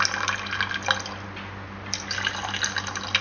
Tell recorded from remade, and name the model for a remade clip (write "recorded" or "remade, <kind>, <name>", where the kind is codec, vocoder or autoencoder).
recorded